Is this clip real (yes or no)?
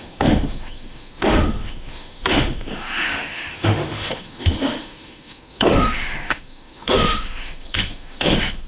no